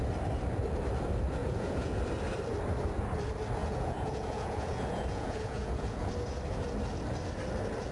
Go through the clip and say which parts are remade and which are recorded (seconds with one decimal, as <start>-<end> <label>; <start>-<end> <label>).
0.0-1.4 recorded; 1.4-2.0 remade; 2.0-3.6 recorded; 3.6-6.1 remade; 6.1-7.9 recorded